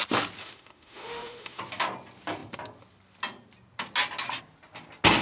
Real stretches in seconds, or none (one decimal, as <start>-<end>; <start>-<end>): 0.0-0.4; 1.6-5.2